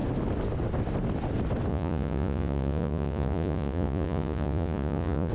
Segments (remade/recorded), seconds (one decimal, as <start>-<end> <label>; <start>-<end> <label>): 0.0-1.7 recorded; 1.7-5.3 remade